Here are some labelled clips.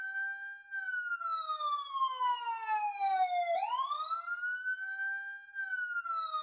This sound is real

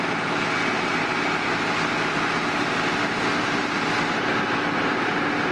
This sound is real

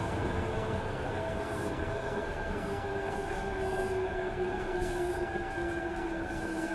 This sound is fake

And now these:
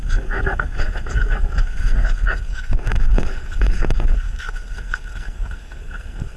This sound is fake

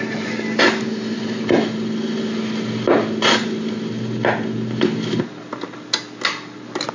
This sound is real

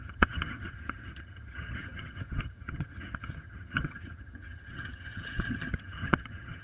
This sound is fake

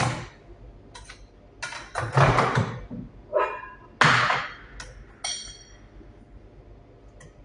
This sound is real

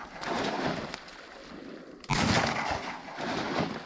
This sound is real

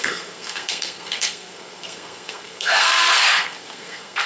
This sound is fake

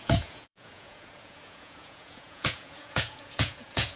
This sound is fake